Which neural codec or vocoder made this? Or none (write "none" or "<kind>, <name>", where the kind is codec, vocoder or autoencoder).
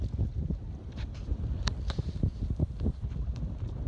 none